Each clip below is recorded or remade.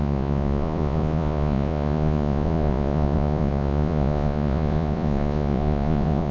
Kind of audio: remade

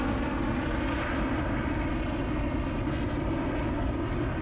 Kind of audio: recorded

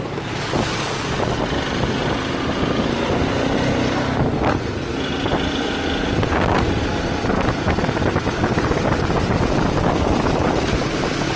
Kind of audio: recorded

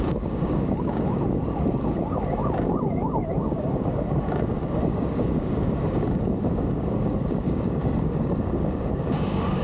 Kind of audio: remade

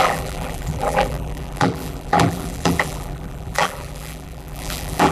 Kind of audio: remade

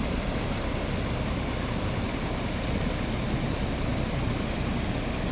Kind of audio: recorded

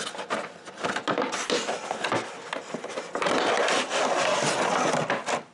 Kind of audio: recorded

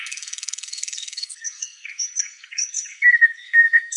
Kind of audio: remade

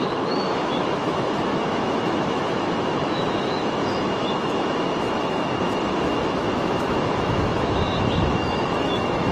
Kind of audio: remade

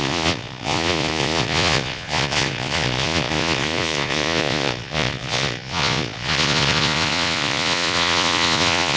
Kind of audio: remade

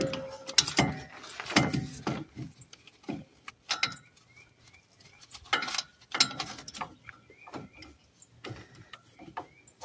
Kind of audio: recorded